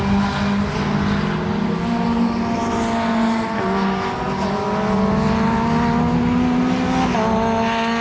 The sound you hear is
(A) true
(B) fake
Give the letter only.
A